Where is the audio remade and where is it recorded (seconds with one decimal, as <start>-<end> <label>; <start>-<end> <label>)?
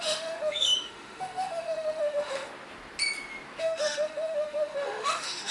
0.0-2.5 remade; 2.5-3.6 recorded; 3.6-5.5 remade